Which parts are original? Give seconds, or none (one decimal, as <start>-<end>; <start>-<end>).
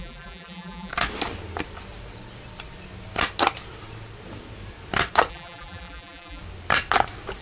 0.9-5.3; 6.4-7.4